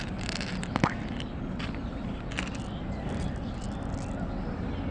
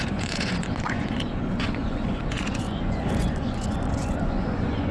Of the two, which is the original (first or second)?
first